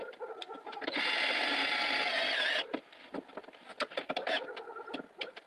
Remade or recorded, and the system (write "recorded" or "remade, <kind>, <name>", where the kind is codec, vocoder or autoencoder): recorded